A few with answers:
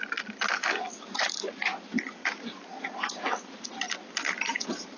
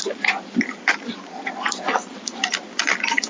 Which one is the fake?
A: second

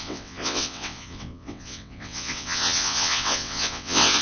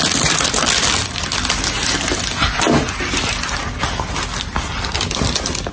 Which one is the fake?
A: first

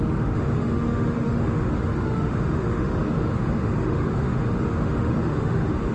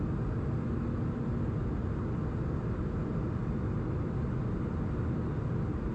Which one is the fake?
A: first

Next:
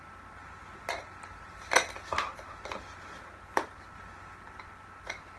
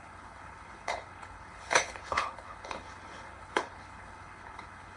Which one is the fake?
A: second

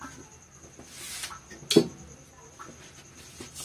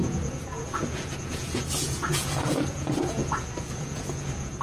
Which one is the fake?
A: second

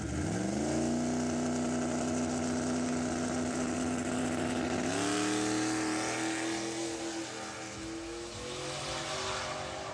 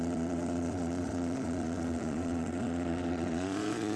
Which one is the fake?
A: second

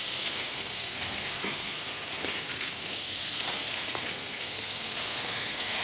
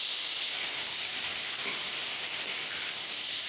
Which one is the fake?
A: first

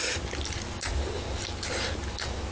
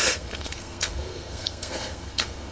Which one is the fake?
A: second